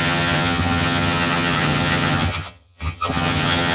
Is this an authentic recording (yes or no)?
no